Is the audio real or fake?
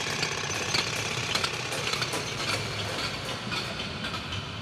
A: real